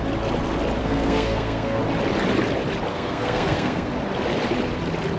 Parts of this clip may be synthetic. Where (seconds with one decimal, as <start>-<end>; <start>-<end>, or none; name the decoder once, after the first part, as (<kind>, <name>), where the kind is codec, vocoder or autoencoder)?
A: 0.8-1.8 (codec, SNAC); 2.9-3.9